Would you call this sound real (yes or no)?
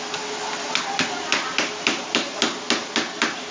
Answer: yes